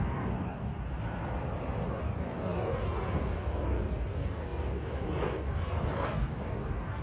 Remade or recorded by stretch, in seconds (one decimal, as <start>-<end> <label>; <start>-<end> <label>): 0.0-0.7 remade; 0.7-1.9 recorded; 1.9-7.0 remade